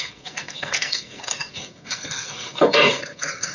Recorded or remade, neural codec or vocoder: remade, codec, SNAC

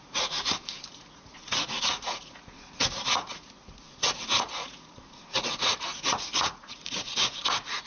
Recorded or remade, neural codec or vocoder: remade, vocoder, Vocos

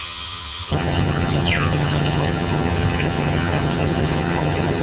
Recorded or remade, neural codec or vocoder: remade, vocoder, HiFi-GAN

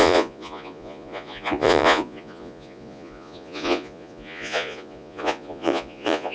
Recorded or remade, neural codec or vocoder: remade, vocoder, Vocos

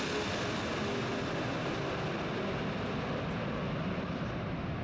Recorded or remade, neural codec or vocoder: recorded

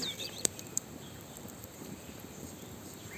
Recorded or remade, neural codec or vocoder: remade, vocoder, BigVGAN v2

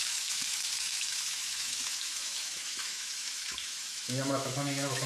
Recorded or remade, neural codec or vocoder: remade, autoencoder, DAC-VAE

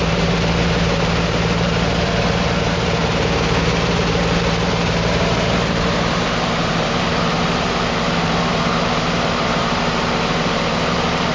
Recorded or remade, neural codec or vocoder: remade, vocoder, BigVGAN v2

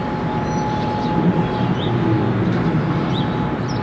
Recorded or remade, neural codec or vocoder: recorded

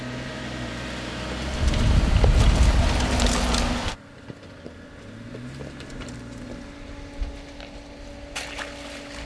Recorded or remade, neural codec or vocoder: recorded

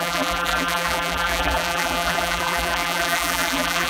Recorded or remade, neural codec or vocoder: remade, vocoder, BigVGAN v2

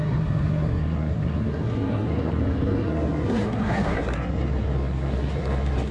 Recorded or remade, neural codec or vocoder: remade, codec, SNAC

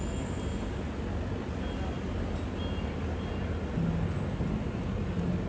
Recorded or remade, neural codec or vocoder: recorded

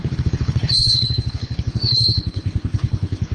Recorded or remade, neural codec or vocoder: remade, codec, HILCodec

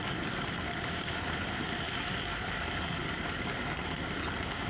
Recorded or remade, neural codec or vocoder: recorded